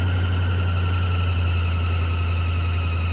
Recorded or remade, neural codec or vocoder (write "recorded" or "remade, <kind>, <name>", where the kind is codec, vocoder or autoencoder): recorded